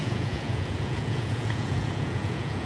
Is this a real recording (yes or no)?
no